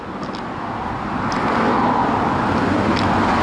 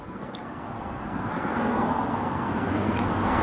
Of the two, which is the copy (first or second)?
second